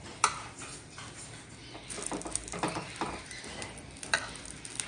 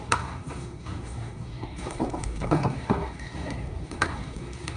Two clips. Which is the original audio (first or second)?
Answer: first